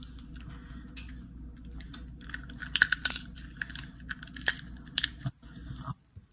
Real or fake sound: real